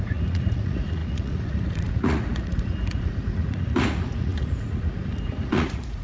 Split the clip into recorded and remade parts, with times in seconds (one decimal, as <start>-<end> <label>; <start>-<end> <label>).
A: 0.0-6.0 remade